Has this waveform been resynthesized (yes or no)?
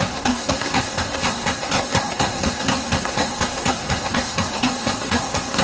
yes